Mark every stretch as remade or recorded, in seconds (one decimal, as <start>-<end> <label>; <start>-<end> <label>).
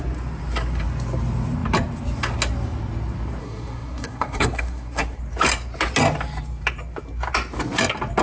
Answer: 0.0-3.4 recorded; 3.4-5.2 remade; 5.2-8.2 recorded